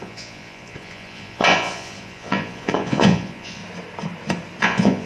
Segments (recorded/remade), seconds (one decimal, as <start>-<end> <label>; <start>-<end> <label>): 0.0-3.6 remade; 3.6-4.6 recorded; 4.6-5.1 remade